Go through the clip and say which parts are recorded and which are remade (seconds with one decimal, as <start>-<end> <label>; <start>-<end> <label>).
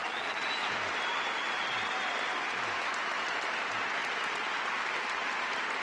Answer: 0.0-0.5 remade; 0.5-5.8 recorded